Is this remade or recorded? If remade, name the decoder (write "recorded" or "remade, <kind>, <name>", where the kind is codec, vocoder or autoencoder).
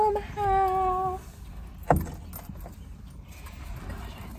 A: recorded